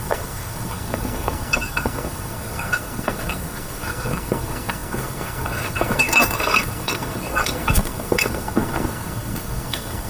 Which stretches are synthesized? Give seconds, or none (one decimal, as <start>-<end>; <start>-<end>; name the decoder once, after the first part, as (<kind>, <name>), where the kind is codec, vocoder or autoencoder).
0.0-10.1 (codec, SNAC)